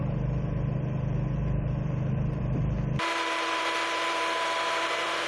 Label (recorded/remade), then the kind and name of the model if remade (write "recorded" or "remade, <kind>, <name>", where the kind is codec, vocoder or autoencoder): remade, vocoder, BigVGAN v2